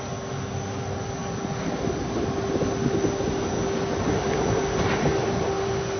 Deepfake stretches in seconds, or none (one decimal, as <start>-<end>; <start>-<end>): none